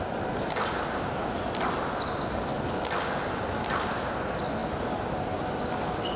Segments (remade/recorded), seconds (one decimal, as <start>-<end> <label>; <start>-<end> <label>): 0.0-6.2 recorded